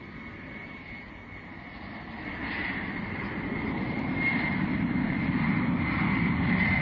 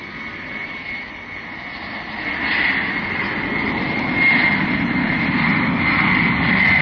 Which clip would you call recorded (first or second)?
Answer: second